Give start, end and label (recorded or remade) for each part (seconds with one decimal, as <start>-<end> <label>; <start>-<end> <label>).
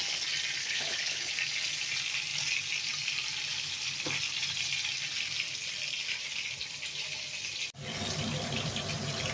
0.0-0.6 recorded; 0.6-1.3 remade; 1.3-9.3 recorded